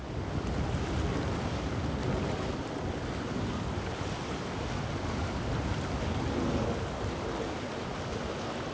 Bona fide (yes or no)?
yes